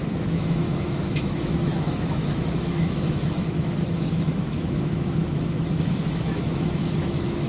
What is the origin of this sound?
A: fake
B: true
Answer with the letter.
A